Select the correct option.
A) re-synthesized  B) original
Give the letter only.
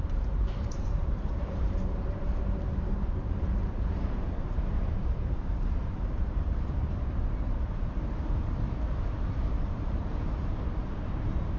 A